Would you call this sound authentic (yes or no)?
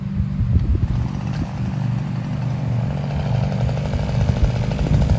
yes